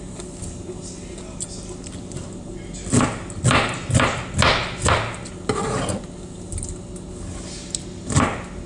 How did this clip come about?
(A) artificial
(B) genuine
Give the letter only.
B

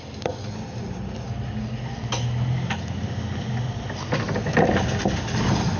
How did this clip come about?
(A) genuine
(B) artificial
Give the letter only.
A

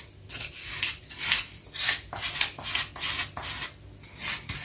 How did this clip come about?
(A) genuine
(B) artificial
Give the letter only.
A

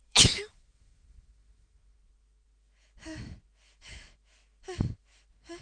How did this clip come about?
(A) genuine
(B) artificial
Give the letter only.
B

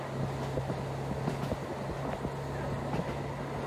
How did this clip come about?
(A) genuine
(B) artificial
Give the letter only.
A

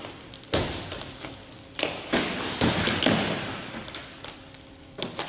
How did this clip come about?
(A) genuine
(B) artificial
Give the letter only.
A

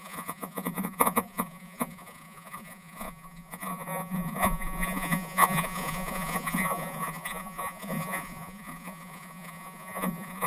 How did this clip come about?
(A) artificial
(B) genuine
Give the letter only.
A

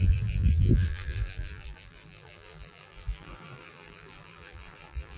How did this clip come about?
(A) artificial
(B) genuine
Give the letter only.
A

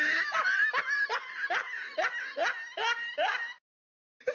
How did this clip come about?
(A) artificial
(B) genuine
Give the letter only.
B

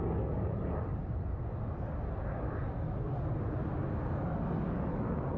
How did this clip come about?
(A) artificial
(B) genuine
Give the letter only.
B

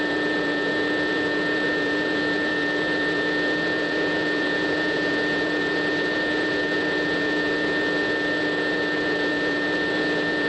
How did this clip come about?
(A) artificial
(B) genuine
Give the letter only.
A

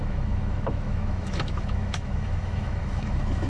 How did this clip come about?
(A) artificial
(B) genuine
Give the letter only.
A